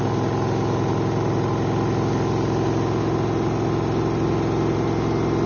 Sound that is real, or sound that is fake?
real